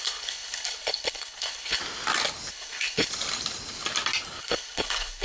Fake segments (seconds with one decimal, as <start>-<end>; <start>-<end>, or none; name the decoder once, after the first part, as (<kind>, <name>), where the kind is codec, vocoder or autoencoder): 0.0-1.8 (codec, HILCodec); 2.5-3.1; 4.4-5.2